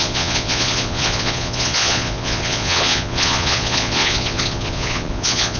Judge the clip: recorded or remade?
remade